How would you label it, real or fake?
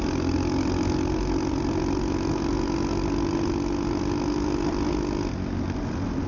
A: real